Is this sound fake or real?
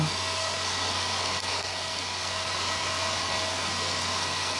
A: fake